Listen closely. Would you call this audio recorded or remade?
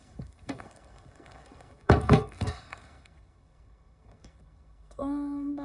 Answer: remade